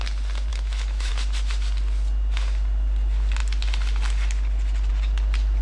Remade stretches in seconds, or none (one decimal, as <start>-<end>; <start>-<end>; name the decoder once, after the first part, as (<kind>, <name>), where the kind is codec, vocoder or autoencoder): 0.5-1.1 (autoencoder, DAC-VAE)